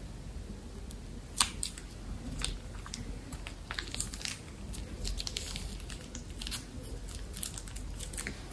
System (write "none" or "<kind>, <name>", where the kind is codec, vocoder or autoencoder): none